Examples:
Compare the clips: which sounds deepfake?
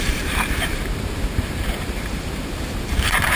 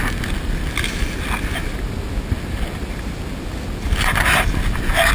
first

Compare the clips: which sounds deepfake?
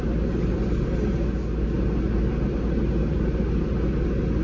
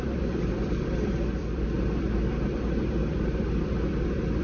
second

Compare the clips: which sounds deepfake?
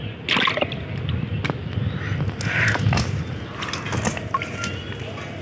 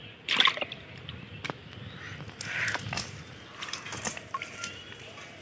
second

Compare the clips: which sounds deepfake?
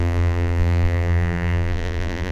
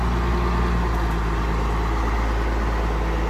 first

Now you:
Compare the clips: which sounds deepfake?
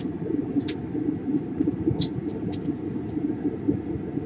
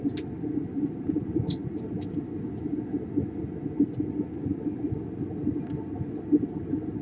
first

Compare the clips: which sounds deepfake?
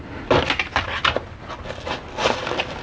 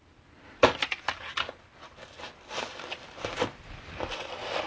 second